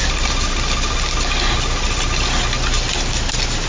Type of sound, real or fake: real